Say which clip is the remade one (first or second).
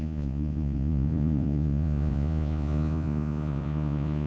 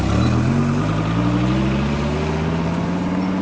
first